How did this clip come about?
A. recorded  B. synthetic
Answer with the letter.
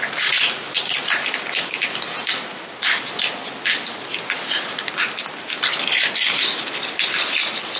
A